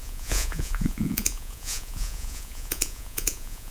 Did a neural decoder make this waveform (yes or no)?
yes